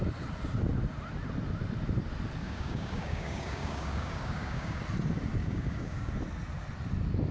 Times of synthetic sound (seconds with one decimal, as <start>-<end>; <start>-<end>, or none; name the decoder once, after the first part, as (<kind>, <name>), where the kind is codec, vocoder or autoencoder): 2.4-4.8 (codec, DAC); 5.4-6.1